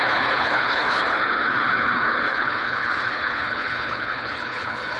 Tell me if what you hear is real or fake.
fake